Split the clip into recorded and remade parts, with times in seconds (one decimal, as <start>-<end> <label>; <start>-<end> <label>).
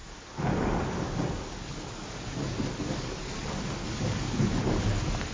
0.0-5.3 remade